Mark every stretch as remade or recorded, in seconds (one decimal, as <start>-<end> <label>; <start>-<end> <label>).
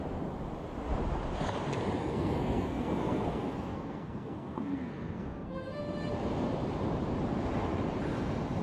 0.0-2.0 recorded; 2.0-5.8 remade; 5.8-8.6 recorded